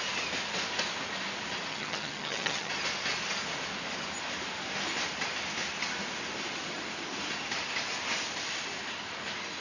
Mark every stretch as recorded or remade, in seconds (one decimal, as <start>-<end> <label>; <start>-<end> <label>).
0.0-1.7 recorded; 1.7-2.7 remade; 2.7-9.6 recorded